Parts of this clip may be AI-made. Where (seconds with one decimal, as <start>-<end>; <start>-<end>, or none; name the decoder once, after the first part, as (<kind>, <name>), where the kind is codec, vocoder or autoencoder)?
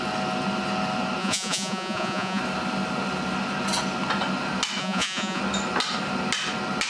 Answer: 1.2-2.4 (vocoder, Vocos); 4.8-5.4